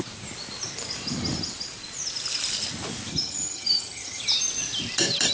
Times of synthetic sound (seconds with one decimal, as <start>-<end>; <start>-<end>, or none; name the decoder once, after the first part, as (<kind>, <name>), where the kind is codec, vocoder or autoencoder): 3.1-4.2 (vocoder, HiFi-GAN)

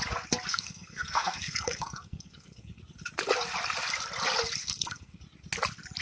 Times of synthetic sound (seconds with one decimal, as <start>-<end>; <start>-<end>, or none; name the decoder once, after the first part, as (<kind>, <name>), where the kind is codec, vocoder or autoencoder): 0.5-2.8 (codec, SNAC); 4.6-5.2

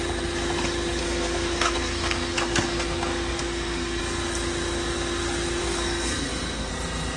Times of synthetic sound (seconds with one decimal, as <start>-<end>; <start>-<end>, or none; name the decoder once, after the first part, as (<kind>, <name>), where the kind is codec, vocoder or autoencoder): 1.0-4.0 (codec, SNAC); 5.6-6.7

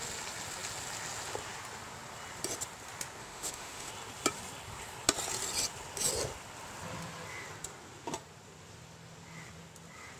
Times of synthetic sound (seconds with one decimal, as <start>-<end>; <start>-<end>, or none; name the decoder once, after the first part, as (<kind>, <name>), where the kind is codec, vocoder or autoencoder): 3.2-3.9 (autoencoder, DAC-VAE)

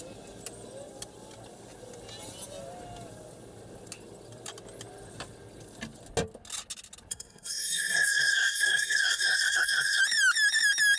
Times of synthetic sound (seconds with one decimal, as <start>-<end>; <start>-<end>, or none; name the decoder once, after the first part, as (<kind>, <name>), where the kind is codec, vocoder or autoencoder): 7.1-10.0 (codec, SNAC)

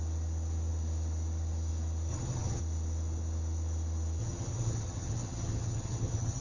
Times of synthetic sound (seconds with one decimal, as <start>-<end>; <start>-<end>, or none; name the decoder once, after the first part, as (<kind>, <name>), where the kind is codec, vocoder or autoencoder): 2.1-2.6 (vocoder, HiFi-GAN); 4.2-6.4

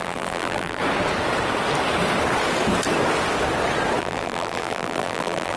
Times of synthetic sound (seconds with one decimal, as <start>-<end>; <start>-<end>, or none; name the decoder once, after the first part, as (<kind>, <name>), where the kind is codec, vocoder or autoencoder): 0.0-0.8 (vocoder, BigVGAN v2); 4.0-5.6

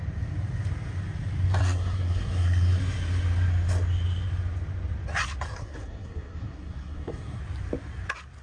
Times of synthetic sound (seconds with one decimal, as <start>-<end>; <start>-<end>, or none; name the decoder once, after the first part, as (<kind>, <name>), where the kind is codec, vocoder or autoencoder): 1.6-2.8 (codec, SNAC); 5.6-7.4